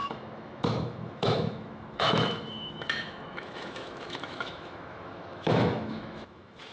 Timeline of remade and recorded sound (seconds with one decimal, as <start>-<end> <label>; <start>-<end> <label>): 0.0-6.7 remade